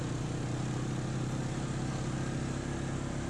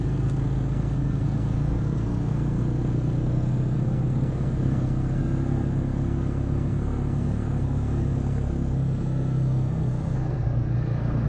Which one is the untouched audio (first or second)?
first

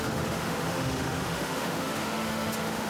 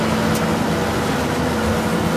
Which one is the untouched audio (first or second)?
second